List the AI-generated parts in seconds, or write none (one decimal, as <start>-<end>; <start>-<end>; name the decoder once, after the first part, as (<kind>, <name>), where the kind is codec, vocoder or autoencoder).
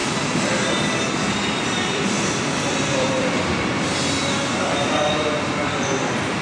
1.1-3.9 (vocoder, BigVGAN v2); 5.6-6.4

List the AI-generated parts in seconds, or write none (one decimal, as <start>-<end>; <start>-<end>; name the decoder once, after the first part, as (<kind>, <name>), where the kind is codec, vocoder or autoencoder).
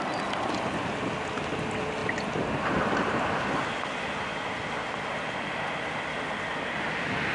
none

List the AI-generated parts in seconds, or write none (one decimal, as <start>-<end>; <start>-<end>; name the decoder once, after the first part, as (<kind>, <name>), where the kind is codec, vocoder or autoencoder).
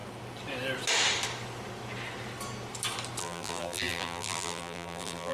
3.2-5.3 (vocoder, BigVGAN v2)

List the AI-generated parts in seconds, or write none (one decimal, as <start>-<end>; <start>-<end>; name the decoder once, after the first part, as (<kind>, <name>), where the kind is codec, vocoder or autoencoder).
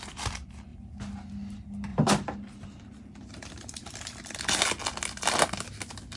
1.9-4.6 (vocoder, BigVGAN v2)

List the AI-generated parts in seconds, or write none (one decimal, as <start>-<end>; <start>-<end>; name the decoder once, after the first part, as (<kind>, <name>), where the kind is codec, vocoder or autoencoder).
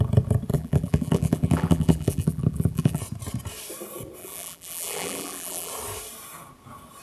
0.5-3.0 (vocoder, BigVGAN v2); 4.2-5.7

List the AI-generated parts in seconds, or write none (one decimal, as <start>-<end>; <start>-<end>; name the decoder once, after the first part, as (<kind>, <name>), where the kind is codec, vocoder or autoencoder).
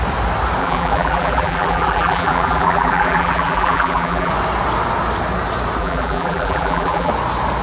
0.6-4.3 (vocoder, BigVGAN v2); 5.8-7.1